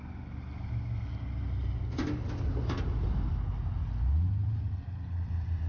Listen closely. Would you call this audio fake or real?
real